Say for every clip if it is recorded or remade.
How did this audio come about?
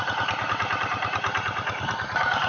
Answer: remade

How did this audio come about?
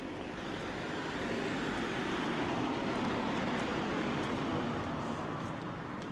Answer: recorded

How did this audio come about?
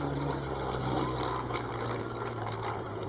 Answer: remade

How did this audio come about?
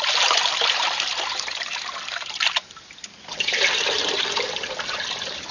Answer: remade